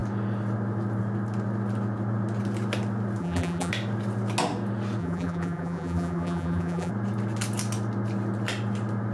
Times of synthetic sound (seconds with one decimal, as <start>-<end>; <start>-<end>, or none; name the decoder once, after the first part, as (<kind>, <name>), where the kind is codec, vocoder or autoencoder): 3.2-3.7 (vocoder, BigVGAN v2); 5.0-6.9